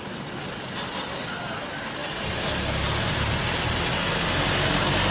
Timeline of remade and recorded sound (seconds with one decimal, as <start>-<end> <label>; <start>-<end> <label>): 0.0-5.1 recorded